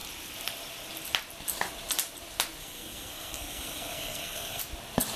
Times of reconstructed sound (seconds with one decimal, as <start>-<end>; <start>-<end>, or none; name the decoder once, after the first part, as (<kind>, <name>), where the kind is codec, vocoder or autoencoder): 2.6-4.6 (codec, SNAC)